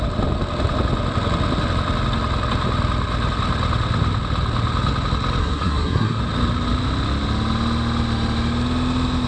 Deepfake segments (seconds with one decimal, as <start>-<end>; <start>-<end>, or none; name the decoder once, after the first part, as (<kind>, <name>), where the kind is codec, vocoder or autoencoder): 5.4-6.2 (codec, SNAC)